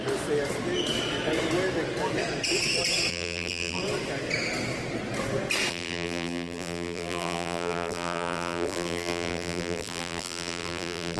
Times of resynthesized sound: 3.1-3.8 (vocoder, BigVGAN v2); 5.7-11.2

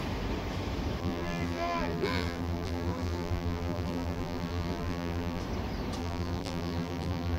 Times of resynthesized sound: 1.0-5.4 (vocoder, BigVGAN v2); 6.0-7.4

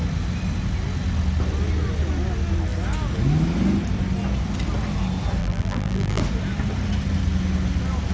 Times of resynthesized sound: 5.4-6.2 (vocoder, BigVGAN v2)

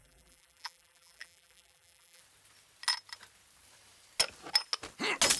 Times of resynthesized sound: 0.0-2.2 (vocoder, BigVGAN v2)